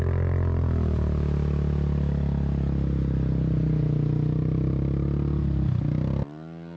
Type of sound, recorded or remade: recorded